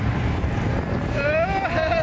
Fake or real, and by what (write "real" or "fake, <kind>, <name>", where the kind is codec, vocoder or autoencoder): real